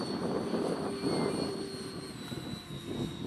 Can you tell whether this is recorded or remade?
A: recorded